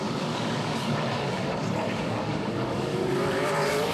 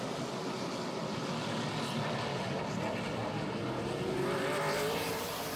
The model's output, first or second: first